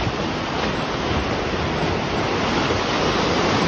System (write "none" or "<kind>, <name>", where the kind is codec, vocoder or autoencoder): none